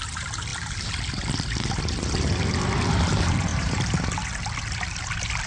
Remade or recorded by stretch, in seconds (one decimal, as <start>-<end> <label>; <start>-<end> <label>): 0.0-3.5 recorded; 3.5-4.0 remade; 4.0-5.5 recorded